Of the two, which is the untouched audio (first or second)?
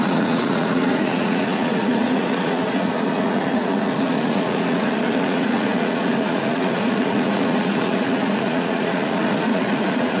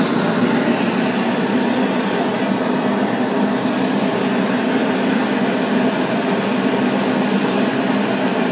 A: second